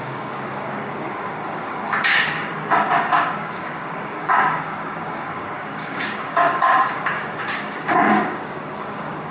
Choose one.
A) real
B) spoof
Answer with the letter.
B